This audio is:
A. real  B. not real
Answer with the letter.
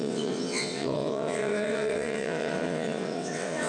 B